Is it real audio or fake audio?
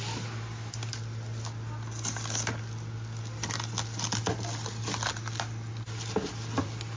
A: real